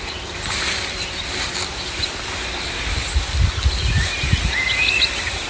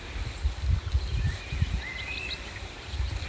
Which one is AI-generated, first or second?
second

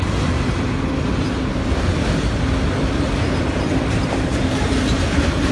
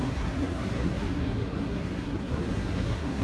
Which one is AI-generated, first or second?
second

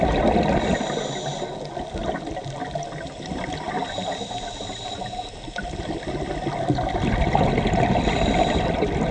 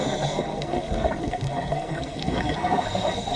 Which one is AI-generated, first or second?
second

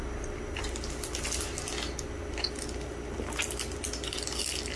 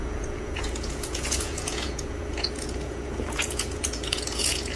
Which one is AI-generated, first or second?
second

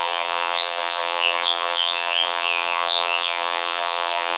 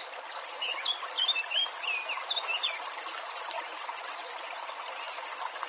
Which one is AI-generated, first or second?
first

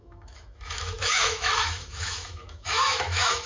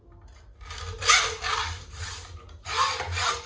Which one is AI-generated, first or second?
first